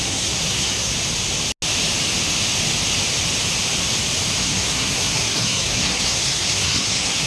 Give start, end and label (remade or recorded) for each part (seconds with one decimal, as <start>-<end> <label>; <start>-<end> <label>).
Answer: 0.0-0.9 remade; 0.9-4.4 recorded; 4.4-7.3 remade